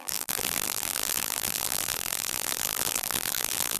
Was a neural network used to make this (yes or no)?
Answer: yes